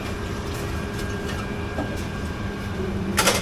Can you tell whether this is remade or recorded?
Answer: remade